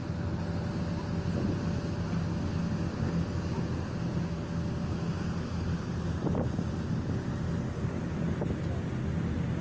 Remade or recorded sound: recorded